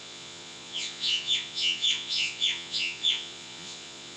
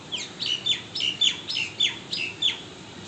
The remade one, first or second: first